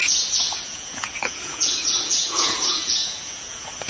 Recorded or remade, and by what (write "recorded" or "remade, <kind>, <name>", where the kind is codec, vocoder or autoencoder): remade, vocoder, Vocos